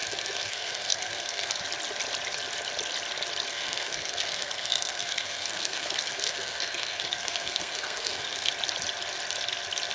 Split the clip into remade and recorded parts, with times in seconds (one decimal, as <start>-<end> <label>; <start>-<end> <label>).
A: 0.0-1.5 remade; 1.5-3.5 recorded; 3.5-8.5 remade; 8.5-9.9 recorded